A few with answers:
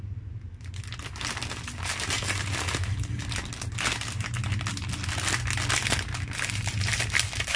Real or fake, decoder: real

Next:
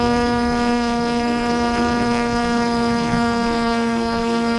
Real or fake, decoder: fake, codec, SNAC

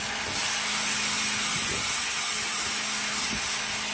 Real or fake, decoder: real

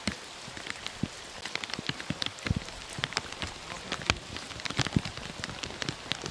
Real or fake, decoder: real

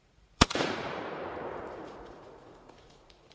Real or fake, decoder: fake, vocoder, Vocos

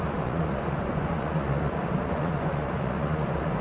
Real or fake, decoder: fake, vocoder, Vocos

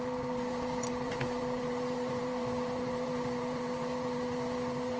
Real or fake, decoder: fake, vocoder, BigVGAN v2